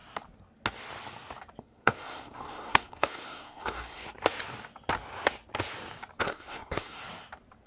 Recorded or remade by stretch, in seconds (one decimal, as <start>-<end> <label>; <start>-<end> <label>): 0.0-1.6 recorded; 1.6-4.0 remade; 4.0-6.2 recorded; 6.2-7.0 remade; 7.0-7.7 recorded